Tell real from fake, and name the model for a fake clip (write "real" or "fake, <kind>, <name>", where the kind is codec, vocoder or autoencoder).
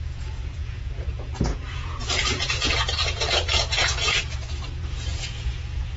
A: fake, vocoder, Vocos